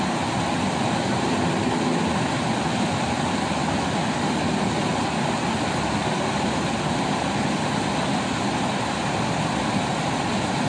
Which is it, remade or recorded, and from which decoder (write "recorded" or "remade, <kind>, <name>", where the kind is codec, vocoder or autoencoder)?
recorded